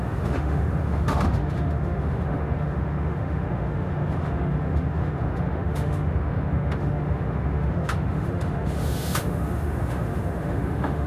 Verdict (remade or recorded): remade